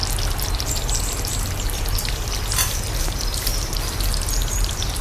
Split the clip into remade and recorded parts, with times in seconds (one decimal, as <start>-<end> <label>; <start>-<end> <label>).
0.0-5.0 recorded

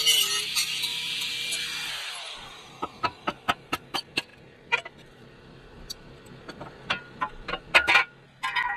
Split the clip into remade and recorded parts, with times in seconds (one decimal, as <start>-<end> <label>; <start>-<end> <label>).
0.0-0.9 recorded; 0.9-2.7 remade; 2.7-4.3 recorded; 4.3-6.3 remade; 6.3-8.8 recorded

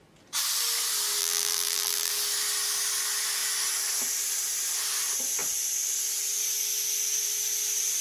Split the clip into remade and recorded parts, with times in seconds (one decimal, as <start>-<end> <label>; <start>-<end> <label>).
0.0-1.2 recorded; 1.2-2.1 remade; 2.1-8.0 recorded

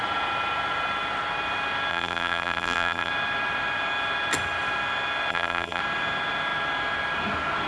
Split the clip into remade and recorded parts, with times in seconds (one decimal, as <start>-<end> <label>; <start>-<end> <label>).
0.0-1.9 recorded; 1.9-3.1 remade; 3.1-5.3 recorded; 5.3-5.8 remade; 5.8-7.7 recorded

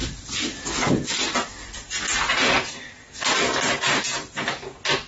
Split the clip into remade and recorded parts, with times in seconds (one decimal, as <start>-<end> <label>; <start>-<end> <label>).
0.0-1.1 remade; 1.1-5.1 recorded